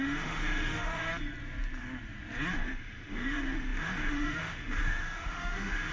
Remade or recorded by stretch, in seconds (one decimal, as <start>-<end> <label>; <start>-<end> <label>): 0.0-1.1 remade; 1.1-2.5 recorded; 2.5-5.9 remade